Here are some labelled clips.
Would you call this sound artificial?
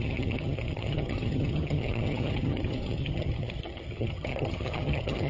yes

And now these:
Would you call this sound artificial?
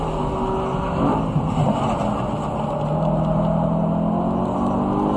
no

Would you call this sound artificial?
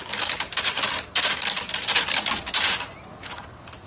no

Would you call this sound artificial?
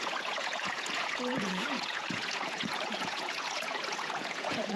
yes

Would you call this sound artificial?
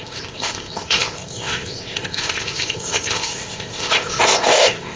yes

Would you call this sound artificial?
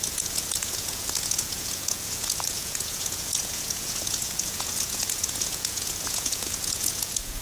yes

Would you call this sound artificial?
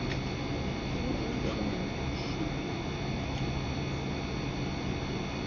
no